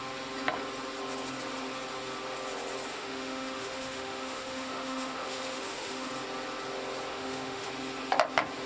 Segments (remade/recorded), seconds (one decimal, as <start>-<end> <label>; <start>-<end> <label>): 0.0-2.9 recorded; 2.9-6.1 remade; 6.1-7.1 recorded; 7.1-7.7 remade; 7.7-8.7 recorded